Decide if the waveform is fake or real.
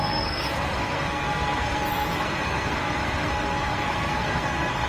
fake